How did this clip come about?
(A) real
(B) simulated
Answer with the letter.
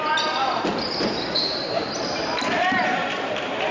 B